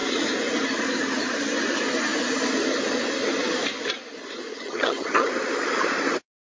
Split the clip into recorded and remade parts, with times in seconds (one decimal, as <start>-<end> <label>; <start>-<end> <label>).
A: 0.0-4.5 recorded; 4.5-5.3 remade; 5.3-6.5 recorded